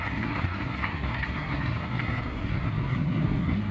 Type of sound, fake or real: fake